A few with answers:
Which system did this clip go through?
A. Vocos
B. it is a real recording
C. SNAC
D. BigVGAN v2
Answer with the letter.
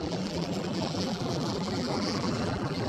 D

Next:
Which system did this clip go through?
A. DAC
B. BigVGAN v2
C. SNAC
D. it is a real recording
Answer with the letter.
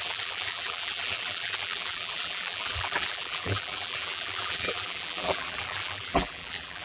B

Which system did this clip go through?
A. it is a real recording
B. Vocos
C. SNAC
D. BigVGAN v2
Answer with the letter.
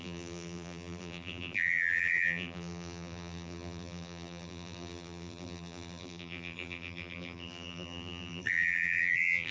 D